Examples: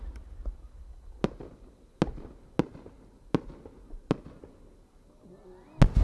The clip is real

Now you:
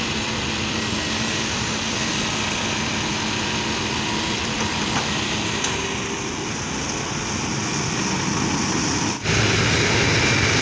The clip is real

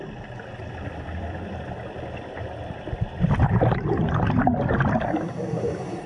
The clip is real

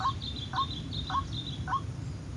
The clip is real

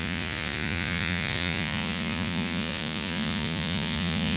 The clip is fake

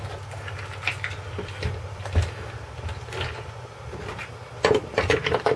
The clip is real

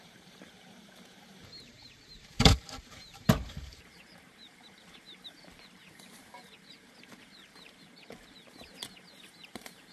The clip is fake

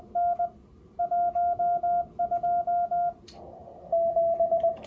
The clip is real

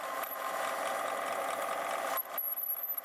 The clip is real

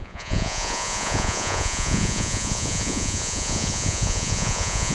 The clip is fake